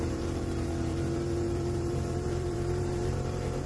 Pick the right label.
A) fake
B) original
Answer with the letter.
A